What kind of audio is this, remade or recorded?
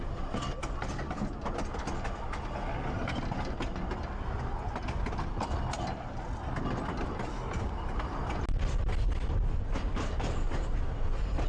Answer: recorded